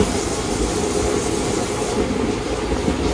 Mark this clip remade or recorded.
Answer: recorded